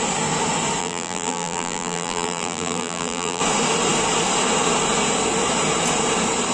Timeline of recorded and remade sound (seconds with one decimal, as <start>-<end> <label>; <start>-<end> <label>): 0.0-0.8 recorded; 0.8-3.4 remade; 3.4-6.5 recorded